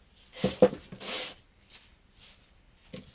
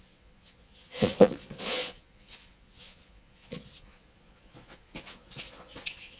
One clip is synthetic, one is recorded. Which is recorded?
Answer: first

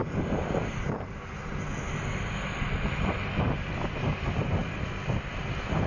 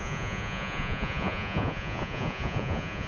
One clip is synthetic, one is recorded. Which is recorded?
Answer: first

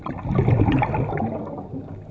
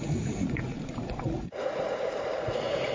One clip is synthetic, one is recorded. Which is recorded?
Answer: first